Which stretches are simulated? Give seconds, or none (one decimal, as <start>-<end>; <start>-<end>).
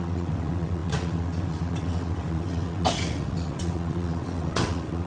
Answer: 0.0-5.1